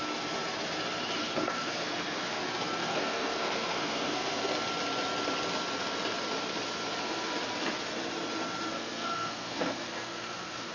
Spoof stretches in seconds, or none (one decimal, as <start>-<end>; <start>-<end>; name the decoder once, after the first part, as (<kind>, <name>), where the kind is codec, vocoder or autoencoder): 1.2-2.4 (codec, SNAC); 2.8-4.4; 8.7-10.7